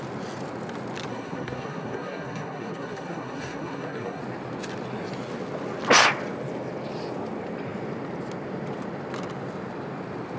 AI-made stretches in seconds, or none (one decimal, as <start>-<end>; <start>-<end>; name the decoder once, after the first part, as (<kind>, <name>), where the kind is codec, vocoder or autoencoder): 1.1-4.2 (codec, SNAC)